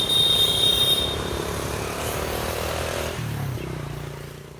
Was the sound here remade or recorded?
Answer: remade